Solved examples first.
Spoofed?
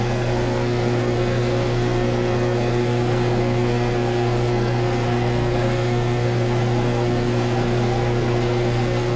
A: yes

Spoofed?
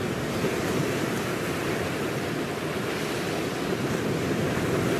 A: no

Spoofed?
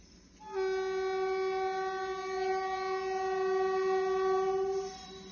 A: no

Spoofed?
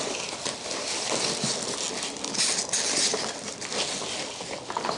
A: no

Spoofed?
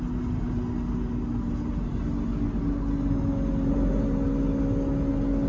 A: no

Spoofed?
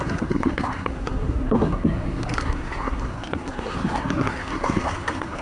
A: yes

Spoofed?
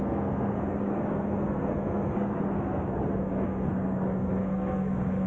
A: yes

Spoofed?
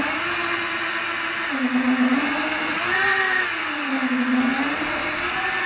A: no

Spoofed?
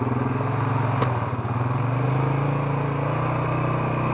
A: no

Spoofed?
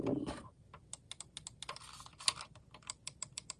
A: no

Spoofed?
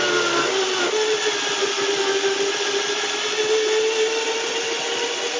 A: no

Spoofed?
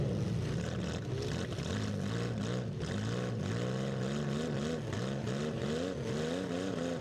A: no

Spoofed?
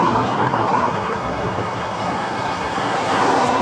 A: yes